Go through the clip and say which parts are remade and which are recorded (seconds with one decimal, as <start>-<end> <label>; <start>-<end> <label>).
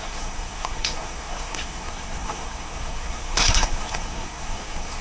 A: 0.0-5.0 remade